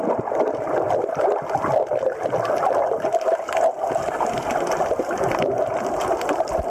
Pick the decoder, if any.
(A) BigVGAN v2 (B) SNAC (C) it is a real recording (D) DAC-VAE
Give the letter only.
C